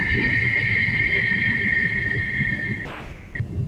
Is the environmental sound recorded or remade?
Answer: recorded